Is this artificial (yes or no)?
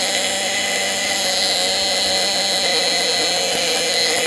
no